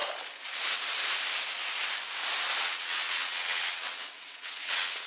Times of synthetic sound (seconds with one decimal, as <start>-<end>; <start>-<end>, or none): 2.6-5.1